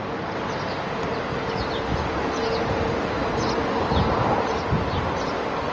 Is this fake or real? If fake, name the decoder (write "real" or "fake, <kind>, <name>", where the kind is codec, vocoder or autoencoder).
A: real